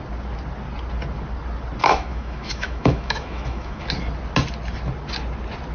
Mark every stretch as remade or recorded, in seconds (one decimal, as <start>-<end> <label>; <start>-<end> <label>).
0.0-1.8 recorded; 1.8-3.8 remade; 3.8-5.7 recorded